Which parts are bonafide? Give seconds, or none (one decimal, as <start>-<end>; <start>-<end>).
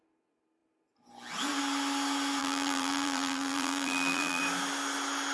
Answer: 0.0-2.4; 4.4-5.3